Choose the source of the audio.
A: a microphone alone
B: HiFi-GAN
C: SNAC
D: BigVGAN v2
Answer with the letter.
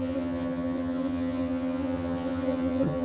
B